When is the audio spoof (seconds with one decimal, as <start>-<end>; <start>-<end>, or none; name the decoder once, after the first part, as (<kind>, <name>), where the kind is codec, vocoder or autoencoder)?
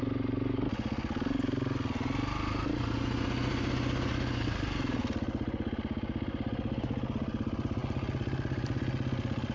none